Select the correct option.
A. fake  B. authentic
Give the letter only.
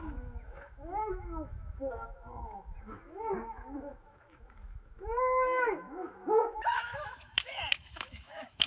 A